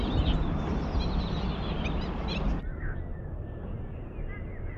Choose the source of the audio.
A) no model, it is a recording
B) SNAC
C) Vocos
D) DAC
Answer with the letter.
A